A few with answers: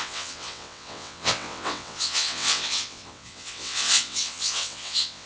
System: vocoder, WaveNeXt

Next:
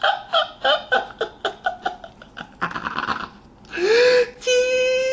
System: none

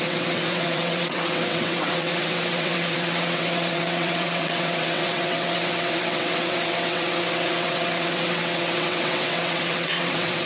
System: vocoder, WaveNeXt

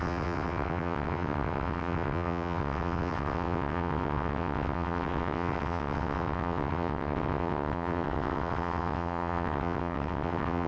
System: vocoder, WaveNeXt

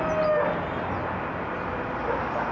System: none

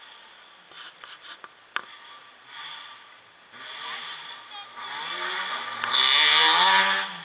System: none